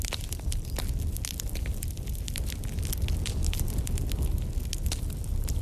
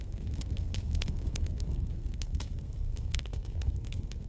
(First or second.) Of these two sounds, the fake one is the second